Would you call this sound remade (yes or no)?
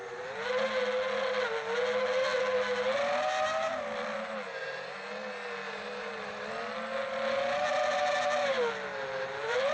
no